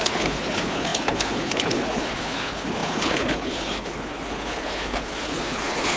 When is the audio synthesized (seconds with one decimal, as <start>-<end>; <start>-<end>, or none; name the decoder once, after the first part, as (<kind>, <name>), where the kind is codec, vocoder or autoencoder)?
0.0-6.0 (codec, HILCodec)